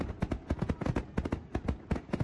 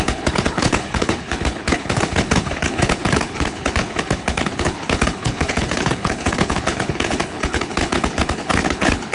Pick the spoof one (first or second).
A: second